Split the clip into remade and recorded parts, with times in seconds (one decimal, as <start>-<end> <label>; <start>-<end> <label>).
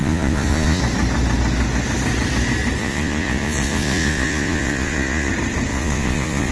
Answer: 0.0-0.8 remade; 0.8-2.8 recorded; 2.8-5.3 remade; 5.3-5.7 recorded; 5.7-6.5 remade